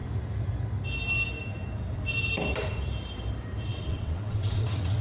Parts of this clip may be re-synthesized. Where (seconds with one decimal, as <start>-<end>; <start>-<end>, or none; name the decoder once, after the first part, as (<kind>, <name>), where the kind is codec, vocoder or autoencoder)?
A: 3.7-5.0 (vocoder, WaveNeXt)